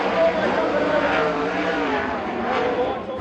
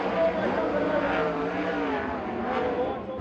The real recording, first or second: second